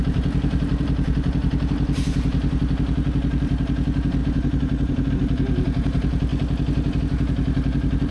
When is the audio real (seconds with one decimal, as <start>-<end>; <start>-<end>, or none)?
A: 0.0-4.2; 5.1-8.1